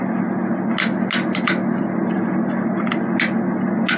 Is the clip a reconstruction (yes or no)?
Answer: no